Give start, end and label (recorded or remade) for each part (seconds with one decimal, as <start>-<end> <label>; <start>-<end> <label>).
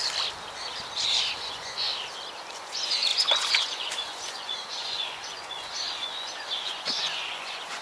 0.0-1.5 recorded; 1.5-1.9 remade; 1.9-2.5 recorded; 2.5-7.8 remade